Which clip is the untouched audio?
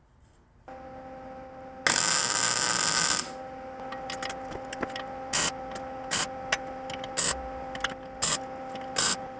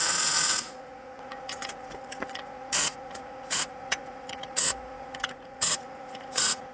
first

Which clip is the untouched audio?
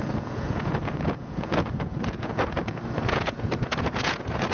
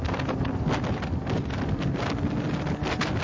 second